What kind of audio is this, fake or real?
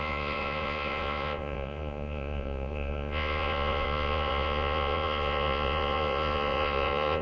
fake